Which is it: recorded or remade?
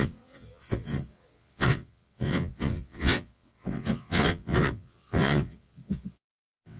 remade